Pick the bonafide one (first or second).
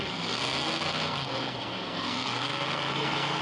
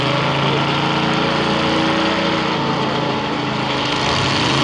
second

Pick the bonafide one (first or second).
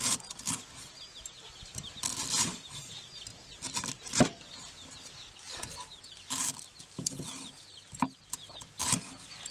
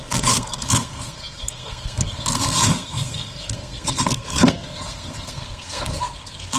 first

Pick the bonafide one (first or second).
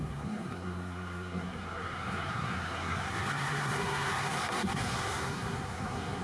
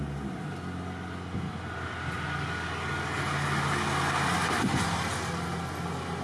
second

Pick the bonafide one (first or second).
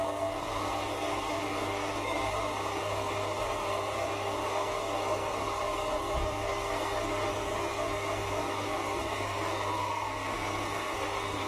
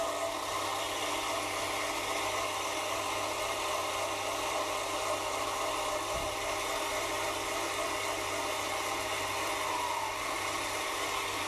second